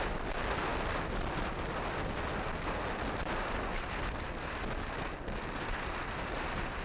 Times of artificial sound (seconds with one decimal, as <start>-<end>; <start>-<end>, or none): none